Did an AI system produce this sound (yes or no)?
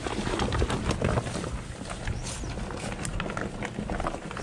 no